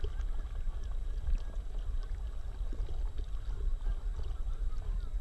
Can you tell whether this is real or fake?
real